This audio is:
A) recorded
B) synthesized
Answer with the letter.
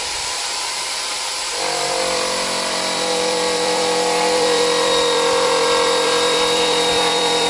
B